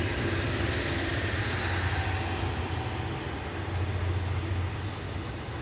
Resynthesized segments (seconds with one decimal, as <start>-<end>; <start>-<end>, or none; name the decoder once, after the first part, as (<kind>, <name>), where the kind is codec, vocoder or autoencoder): none